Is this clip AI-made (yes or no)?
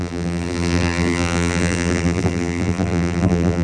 yes